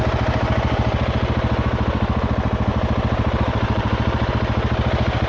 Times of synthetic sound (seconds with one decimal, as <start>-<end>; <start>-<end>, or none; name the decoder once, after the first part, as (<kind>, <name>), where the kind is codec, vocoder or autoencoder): 2.7-4.3 (vocoder, BigVGAN v2)